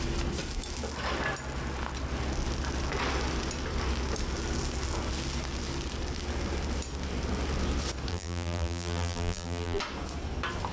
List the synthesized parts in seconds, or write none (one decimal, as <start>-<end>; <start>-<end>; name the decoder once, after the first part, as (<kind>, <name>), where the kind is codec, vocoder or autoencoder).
8.1-9.8 (vocoder, BigVGAN v2)

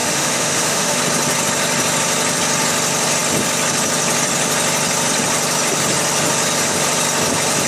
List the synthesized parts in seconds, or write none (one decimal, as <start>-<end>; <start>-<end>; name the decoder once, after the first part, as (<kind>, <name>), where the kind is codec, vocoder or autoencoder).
0.0-1.0 (autoencoder, DAC-VAE)

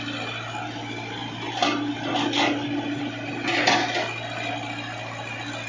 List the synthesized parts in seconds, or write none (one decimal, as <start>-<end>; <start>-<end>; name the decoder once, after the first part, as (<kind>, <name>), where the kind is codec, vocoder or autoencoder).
none

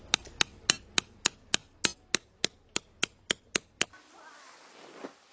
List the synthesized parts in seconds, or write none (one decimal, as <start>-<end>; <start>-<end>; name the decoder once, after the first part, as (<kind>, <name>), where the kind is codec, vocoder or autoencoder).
none

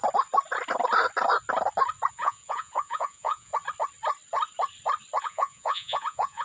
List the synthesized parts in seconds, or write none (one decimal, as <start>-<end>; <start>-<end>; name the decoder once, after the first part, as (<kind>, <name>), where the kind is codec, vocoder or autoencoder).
2.1-3.5 (vocoder, Vocos); 5.2-6.4

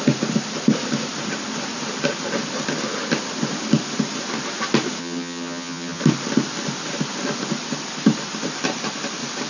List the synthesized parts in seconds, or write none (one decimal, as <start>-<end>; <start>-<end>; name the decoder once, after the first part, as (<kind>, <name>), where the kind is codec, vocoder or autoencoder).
5.0-6.0 (vocoder, HiFi-GAN)

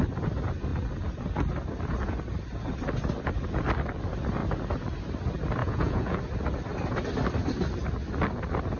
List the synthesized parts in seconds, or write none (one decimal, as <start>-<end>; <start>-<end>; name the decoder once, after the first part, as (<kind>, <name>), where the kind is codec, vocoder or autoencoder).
5.6-6.2 (vocoder, Vocos)